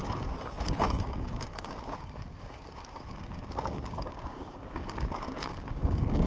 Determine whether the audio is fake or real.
fake